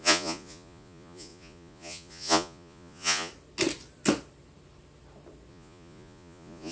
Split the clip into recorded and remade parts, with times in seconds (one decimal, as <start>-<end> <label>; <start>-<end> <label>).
0.0-3.3 remade; 3.3-5.5 recorded; 5.5-6.7 remade